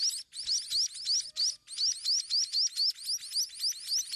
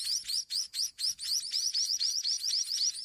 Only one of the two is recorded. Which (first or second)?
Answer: first